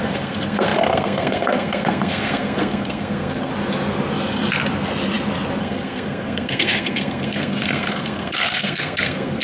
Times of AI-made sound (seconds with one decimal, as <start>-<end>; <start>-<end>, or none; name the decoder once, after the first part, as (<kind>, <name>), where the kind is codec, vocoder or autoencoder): 0.0-3.5 (codec, SNAC); 5.6-9.4